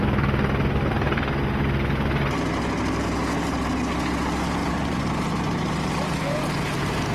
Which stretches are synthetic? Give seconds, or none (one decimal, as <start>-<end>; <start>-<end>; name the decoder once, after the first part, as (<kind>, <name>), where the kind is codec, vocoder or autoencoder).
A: 4.6-7.1 (vocoder, BigVGAN v2)